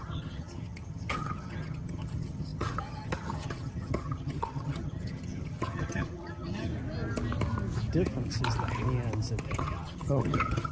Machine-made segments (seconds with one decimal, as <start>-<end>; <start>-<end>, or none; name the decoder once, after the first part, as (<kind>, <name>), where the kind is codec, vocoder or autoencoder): 0.0-6.7 (vocoder, HiFi-GAN); 9.4-10.7